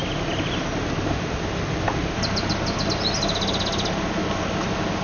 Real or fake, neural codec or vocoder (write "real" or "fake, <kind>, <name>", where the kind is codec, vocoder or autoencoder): real